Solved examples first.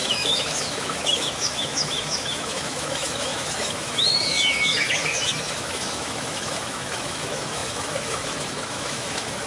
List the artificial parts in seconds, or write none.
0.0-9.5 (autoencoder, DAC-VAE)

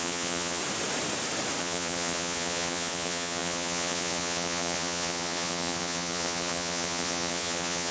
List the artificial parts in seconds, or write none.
0.0-0.6 (vocoder, Vocos); 1.6-7.9

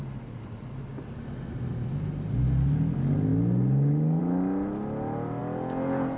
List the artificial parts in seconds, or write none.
none

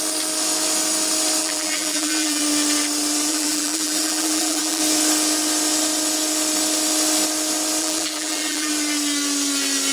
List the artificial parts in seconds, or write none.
1.4-2.4 (vocoder, BigVGAN v2); 3.3-4.8; 7.8-8.7

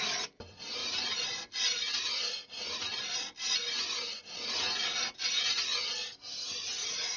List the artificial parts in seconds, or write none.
0.8-1.3 (vocoder, BigVGAN v2)

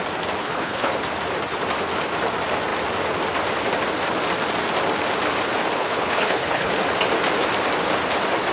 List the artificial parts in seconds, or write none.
0.4-0.9 (codec, HILCodec); 5.8-6.7